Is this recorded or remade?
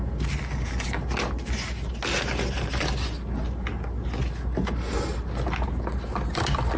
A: recorded